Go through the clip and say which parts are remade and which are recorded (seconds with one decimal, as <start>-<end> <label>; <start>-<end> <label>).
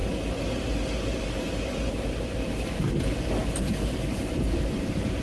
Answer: 0.0-5.2 recorded